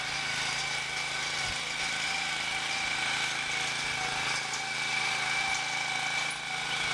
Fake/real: real